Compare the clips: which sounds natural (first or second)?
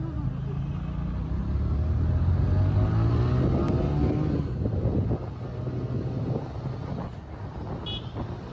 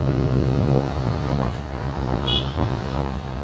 first